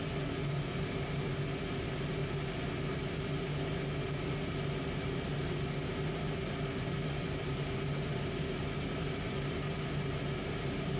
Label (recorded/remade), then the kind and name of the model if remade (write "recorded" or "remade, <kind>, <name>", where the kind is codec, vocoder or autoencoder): recorded